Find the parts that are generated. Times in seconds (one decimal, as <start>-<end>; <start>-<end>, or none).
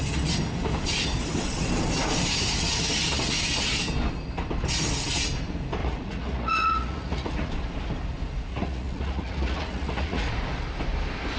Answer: 5.8-7.5; 8.5-10.3